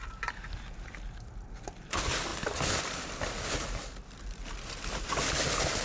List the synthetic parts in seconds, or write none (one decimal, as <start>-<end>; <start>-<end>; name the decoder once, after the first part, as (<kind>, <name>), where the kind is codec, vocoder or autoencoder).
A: none